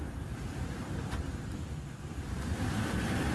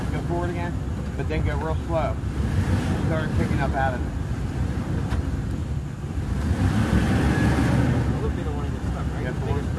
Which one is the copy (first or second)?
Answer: first